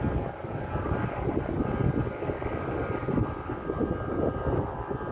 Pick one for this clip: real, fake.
real